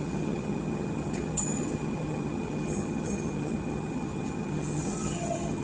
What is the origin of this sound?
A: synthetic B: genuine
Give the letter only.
A